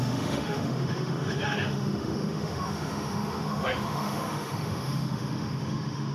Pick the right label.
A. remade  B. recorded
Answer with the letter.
A